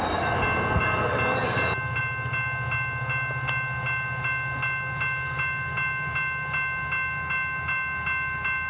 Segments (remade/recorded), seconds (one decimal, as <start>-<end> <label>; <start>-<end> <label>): 0.0-8.7 recorded